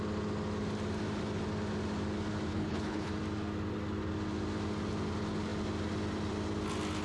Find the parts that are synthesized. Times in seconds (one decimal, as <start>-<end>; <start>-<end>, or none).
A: 2.5-3.1